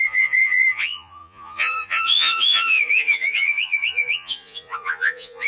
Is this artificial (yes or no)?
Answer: yes